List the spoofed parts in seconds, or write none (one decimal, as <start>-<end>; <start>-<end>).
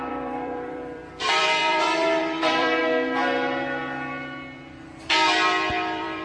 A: 0.0-2.8; 5.7-6.2